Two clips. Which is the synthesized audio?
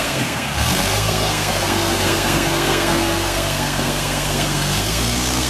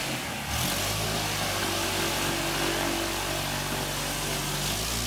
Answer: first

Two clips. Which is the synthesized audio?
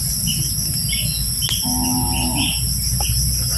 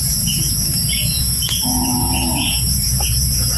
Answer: second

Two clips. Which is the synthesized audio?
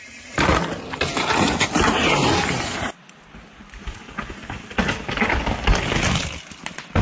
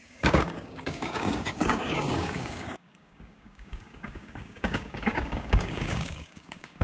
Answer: second